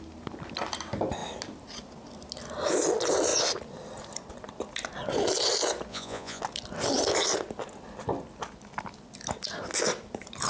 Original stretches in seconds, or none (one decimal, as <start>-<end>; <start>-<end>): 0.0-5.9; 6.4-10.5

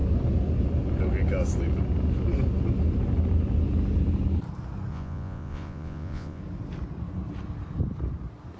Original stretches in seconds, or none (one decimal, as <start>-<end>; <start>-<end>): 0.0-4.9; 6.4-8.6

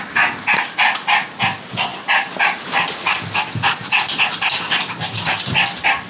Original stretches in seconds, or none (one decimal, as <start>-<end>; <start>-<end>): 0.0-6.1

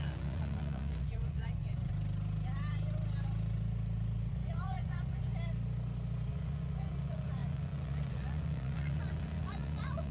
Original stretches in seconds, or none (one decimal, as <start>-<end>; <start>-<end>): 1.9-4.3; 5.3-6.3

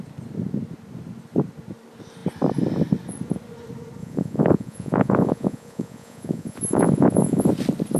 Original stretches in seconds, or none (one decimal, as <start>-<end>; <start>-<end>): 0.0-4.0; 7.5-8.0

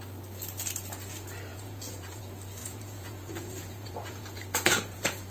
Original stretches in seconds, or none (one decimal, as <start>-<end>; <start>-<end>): 0.0-1.5; 2.2-2.6